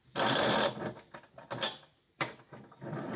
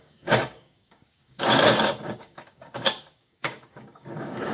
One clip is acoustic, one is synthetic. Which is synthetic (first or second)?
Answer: second